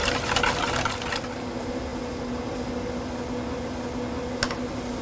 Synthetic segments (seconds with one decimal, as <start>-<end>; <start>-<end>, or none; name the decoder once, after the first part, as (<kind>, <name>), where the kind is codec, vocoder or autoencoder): none